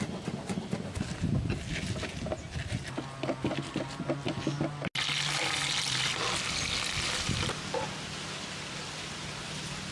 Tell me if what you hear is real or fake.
real